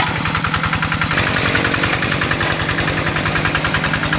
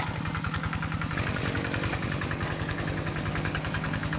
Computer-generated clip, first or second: second